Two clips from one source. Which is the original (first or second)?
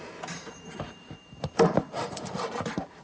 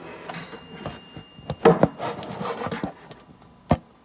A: second